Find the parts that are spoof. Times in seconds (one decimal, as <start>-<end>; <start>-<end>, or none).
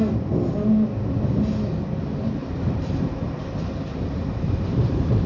2.4-5.3